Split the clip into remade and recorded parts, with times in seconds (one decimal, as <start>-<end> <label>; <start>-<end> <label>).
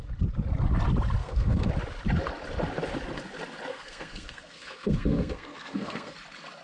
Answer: 0.0-1.2 recorded; 1.2-1.7 remade; 1.7-3.7 recorded; 3.7-6.1 remade; 6.1-6.6 recorded